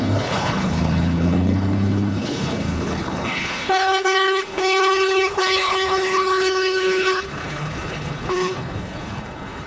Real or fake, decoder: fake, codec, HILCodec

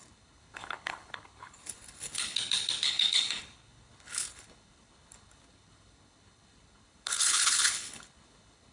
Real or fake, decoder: fake, codec, HILCodec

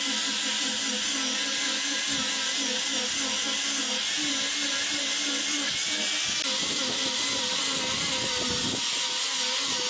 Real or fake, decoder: real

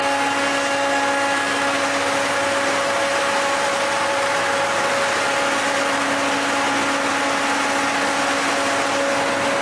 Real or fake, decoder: real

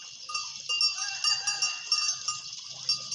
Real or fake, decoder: real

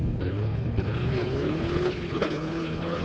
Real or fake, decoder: fake, codec, HILCodec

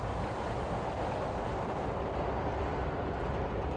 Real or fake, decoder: real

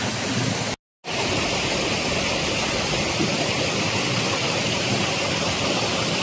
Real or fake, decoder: real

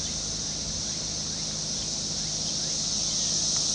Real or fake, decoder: real